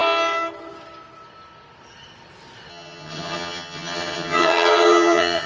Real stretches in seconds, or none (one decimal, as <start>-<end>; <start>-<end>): 0.0-2.7